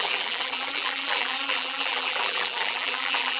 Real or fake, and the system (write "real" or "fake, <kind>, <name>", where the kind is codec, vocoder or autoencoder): fake, vocoder, BigVGAN v2